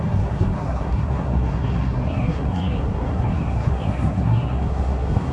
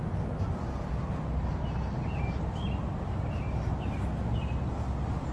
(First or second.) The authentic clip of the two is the second